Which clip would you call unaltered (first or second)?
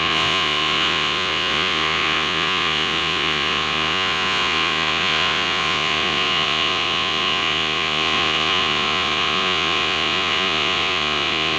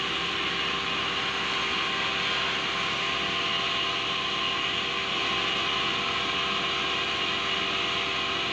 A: second